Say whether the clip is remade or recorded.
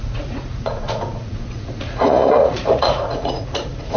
remade